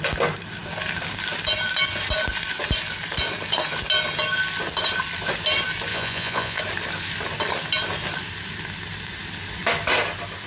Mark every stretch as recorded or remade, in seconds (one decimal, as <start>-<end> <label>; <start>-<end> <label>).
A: 0.0-5.9 recorded; 5.9-6.6 remade; 6.6-10.5 recorded